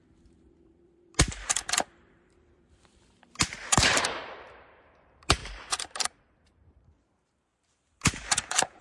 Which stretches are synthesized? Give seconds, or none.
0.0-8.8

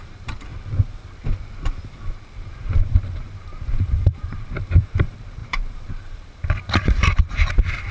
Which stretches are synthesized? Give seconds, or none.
0.0-0.5; 2.1-7.9

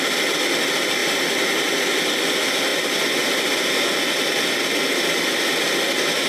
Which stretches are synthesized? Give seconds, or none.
1.0-1.9

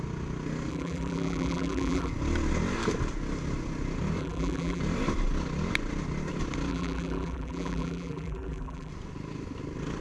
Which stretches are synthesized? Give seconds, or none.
0.7-2.1; 4.2-4.8; 6.7-8.9

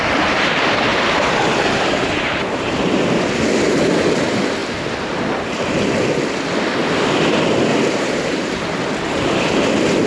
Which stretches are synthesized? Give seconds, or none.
0.9-2.9; 7.7-8.6

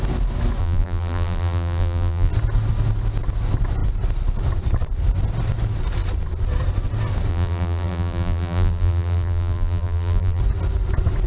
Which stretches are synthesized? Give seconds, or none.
0.6-2.3; 7.3-10.4

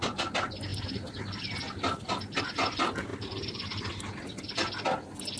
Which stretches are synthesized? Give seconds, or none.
3.1-4.4

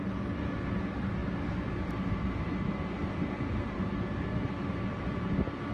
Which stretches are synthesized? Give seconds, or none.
1.2-3.9